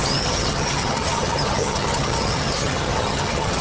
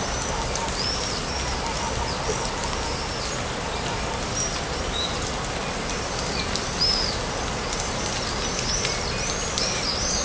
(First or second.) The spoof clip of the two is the first